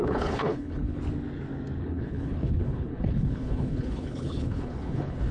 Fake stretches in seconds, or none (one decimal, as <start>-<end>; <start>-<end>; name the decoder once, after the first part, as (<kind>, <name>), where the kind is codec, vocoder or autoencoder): 0.0-1.0 (codec, HILCodec); 1.8-5.3